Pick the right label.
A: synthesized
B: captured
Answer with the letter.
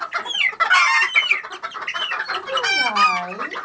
B